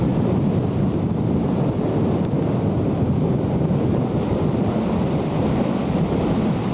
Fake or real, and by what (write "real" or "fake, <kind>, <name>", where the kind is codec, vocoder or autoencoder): real